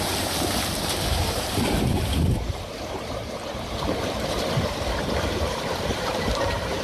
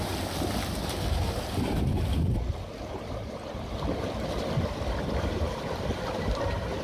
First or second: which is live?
second